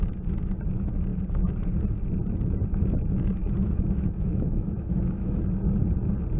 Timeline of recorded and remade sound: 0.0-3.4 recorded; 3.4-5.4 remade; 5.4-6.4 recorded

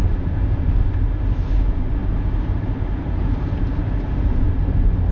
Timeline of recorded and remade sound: 0.0-2.0 recorded; 2.0-3.6 remade; 3.6-5.1 recorded

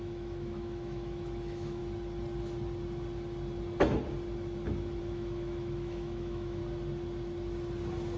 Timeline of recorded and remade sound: 0.0-1.8 remade; 1.8-5.0 recorded; 5.0-6.6 remade; 6.6-8.2 recorded